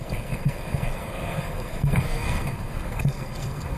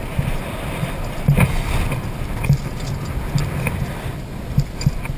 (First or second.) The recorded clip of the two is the second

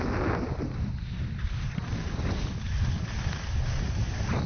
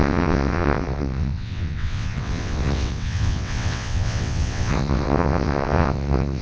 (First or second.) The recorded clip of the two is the first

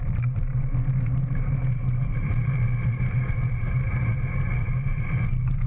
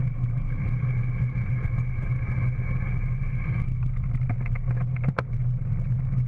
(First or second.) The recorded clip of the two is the second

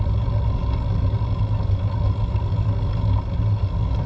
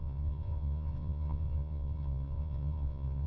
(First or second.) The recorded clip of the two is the first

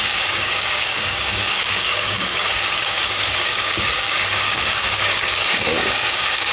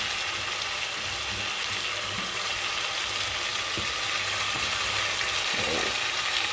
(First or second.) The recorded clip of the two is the second